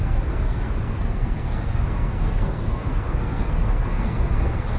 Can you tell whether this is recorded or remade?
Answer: remade